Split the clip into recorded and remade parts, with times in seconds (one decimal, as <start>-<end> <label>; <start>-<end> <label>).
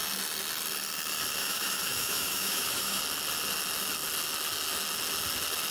0.0-1.4 recorded; 1.4-3.0 remade; 3.0-5.7 recorded